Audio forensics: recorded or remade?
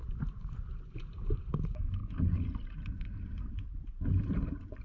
recorded